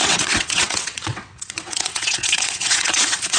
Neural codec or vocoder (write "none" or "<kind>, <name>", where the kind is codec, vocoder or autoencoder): vocoder, WaveNeXt